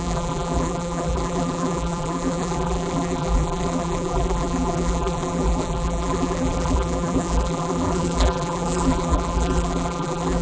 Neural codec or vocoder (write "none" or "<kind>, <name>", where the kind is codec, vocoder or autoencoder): vocoder, BigVGAN v2